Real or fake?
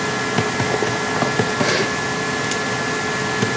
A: real